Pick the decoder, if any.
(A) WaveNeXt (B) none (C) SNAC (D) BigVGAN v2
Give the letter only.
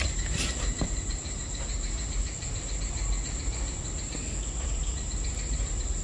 D